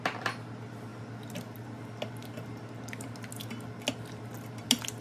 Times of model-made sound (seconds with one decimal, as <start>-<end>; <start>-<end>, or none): none